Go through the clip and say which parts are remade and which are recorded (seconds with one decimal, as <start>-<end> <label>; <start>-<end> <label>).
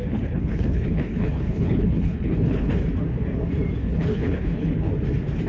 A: 0.0-2.8 remade; 2.8-3.8 recorded; 3.8-4.9 remade; 4.9-5.5 recorded